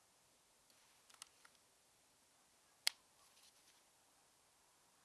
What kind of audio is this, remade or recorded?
recorded